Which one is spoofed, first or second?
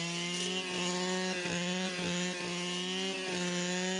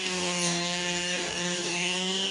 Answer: second